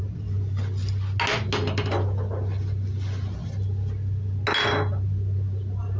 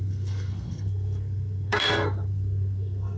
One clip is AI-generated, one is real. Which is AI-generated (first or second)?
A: second